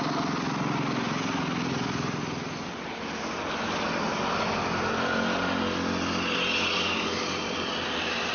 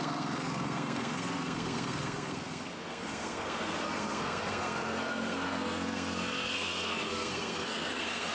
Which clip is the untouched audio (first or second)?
first